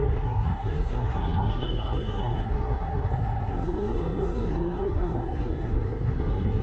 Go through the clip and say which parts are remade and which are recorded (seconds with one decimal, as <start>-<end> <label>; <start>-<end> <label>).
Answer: 0.0-6.6 remade